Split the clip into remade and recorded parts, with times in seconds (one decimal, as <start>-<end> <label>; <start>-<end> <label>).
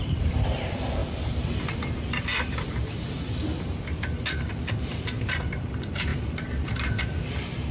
0.0-3.4 remade; 3.4-4.1 recorded; 4.1-7.7 remade